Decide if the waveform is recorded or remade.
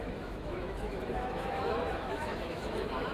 remade